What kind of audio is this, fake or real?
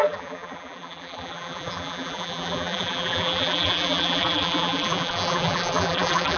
fake